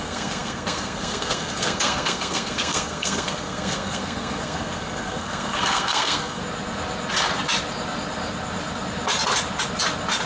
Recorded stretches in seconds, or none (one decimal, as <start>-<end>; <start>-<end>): 6.4-10.3